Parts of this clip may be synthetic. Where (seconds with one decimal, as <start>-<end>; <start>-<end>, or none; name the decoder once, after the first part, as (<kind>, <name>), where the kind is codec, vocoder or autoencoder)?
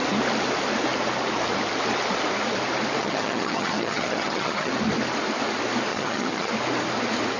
3.0-4.7 (vocoder, HiFi-GAN); 5.9-6.5